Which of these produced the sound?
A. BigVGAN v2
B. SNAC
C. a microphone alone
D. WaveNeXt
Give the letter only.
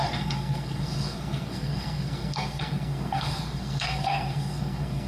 B